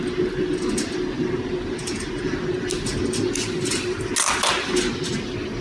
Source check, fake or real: real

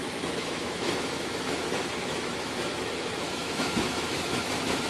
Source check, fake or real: fake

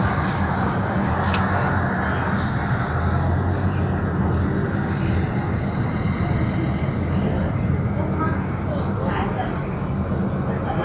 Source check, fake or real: real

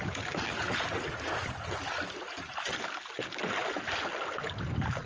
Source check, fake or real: real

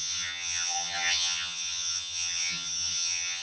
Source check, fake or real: fake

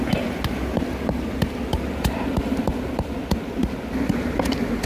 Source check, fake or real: real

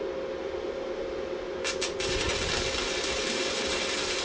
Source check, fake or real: real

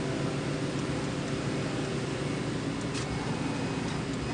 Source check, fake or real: real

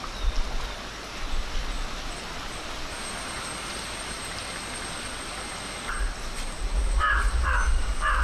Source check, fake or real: real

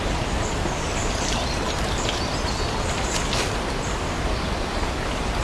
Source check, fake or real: real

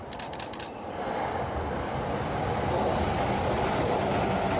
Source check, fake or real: real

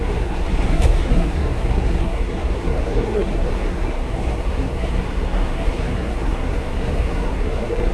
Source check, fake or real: fake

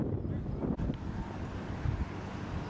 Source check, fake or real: real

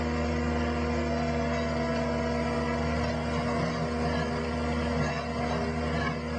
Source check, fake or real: real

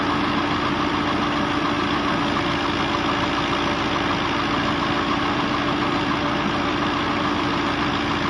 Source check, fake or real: real